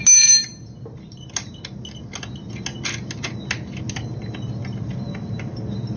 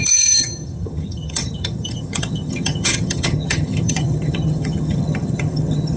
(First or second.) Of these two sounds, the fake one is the second